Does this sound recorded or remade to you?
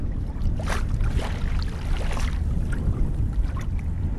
recorded